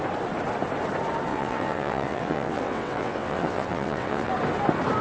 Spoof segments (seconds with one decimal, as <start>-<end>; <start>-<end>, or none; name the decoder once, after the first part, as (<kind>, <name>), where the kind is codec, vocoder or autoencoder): 1.3-4.3 (vocoder, WaveNeXt)